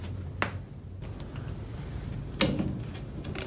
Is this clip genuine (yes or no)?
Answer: yes